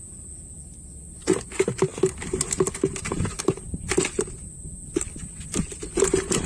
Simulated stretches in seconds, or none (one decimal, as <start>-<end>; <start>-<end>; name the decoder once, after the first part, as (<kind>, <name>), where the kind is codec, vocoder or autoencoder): none